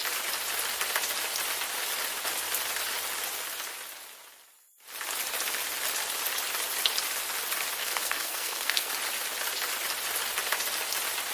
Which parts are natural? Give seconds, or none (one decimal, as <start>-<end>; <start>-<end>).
0.0-7.8; 8.9-11.3

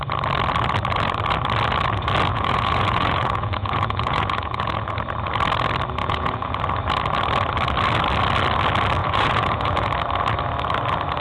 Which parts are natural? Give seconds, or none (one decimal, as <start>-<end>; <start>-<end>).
0.0-2.3; 4.9-6.0; 6.6-9.0; 9.9-11.2

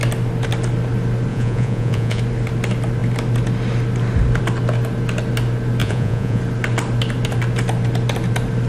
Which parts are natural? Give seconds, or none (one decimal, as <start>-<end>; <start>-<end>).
0.0-1.3; 2.2-5.8; 6.4-8.7

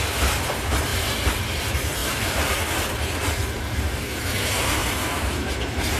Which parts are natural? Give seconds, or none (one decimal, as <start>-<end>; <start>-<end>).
0.0-2.0; 2.8-3.2; 4.2-4.8

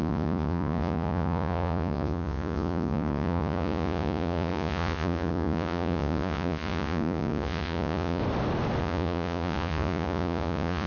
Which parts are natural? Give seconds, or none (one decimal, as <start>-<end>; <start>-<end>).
8.2-8.8

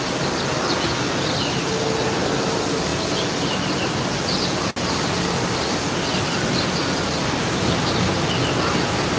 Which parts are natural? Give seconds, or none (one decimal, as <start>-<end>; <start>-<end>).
0.0-9.2